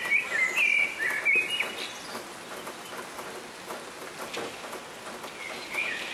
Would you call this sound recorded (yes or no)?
yes